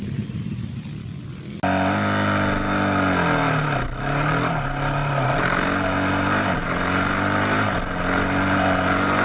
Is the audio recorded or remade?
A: recorded